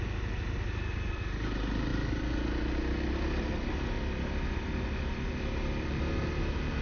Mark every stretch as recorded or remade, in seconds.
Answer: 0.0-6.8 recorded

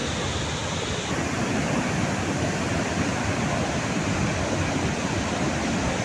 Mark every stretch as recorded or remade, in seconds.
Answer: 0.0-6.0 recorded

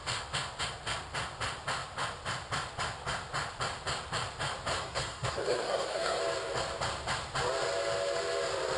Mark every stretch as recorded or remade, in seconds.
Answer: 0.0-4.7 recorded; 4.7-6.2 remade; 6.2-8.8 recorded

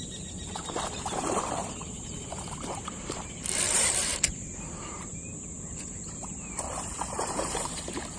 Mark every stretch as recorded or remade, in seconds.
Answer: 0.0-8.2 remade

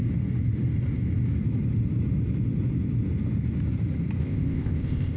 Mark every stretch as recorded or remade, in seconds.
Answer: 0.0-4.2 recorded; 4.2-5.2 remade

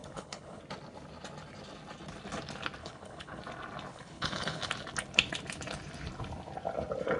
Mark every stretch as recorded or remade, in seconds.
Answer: 0.0-0.6 remade; 0.6-2.8 recorded; 2.8-3.4 remade; 3.4-3.9 recorded; 3.9-4.7 remade; 4.7-7.2 recorded